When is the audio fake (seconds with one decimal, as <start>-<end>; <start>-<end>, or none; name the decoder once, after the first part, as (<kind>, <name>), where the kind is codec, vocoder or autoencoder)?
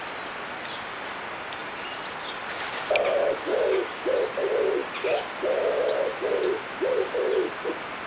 3.5-4.0 (codec, DAC)